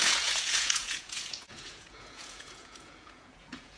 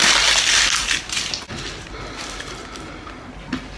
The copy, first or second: first